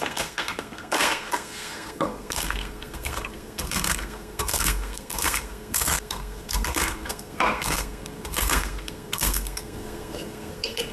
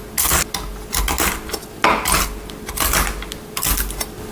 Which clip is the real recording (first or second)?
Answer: second